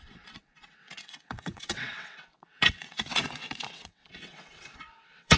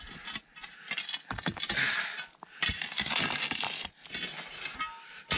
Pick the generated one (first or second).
first